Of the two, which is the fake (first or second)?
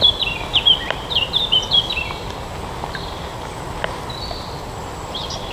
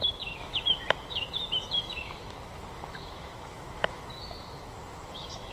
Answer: second